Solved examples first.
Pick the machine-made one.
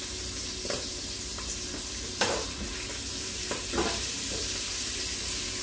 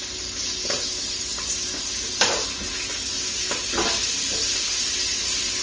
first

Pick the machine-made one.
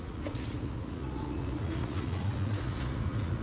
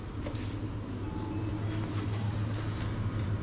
first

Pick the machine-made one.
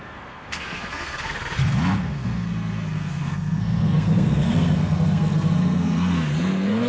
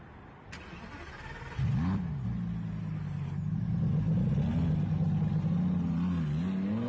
first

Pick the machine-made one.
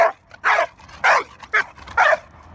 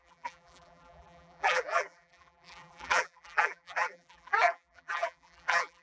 second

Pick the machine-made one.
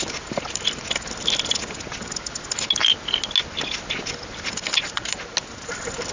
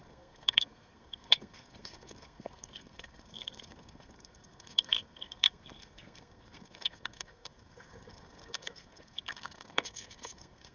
second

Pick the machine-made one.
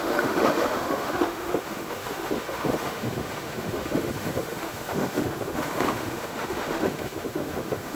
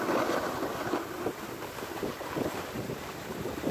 first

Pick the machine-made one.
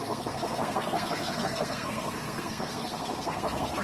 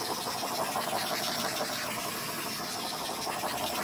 first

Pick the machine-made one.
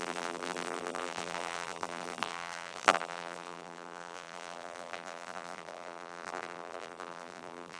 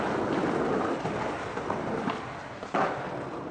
first